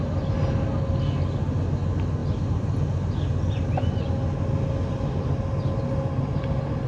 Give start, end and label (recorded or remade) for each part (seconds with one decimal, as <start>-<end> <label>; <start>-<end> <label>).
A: 0.0-6.9 recorded